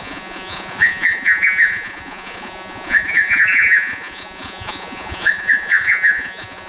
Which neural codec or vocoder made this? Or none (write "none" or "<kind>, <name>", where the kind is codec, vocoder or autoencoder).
vocoder, Vocos